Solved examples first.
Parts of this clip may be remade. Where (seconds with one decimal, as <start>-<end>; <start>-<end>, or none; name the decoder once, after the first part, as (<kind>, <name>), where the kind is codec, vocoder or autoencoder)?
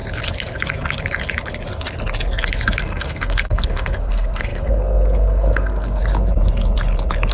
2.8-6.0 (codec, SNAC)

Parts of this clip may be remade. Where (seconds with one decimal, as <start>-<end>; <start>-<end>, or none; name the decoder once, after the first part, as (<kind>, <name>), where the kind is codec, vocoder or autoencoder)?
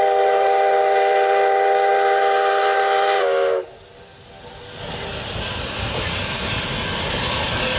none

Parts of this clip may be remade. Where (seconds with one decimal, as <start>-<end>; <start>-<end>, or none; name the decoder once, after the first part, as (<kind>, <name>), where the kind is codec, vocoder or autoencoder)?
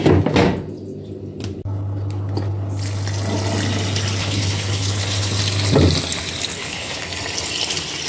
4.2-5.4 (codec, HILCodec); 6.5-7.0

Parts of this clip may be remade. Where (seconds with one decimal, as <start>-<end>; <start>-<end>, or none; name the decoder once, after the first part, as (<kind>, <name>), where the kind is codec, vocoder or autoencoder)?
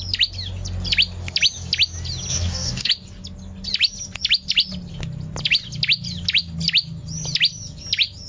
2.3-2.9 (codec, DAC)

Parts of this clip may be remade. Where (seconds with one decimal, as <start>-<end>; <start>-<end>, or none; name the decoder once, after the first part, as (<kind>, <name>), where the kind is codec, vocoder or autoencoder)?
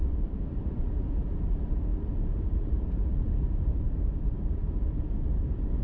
0.0-5.8 (vocoder, BigVGAN v2)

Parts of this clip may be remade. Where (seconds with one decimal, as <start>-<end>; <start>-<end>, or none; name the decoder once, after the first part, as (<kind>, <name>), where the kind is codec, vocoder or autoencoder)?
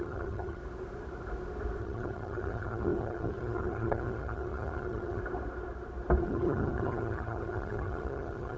0.0-0.6 (vocoder, HiFi-GAN); 1.8-5.2; 6.2-8.6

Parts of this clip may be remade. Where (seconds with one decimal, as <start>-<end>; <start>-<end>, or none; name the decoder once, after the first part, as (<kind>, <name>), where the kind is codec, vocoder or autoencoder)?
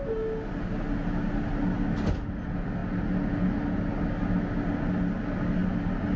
none